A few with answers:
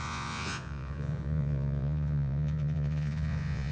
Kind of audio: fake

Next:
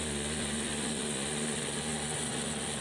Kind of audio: fake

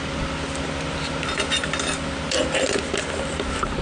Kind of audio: real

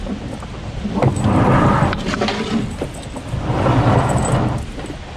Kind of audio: real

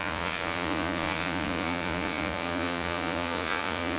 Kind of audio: fake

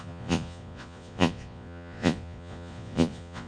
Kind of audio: fake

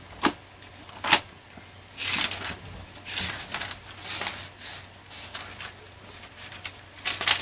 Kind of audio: real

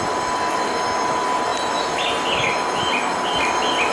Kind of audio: real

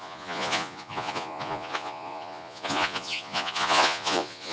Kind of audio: fake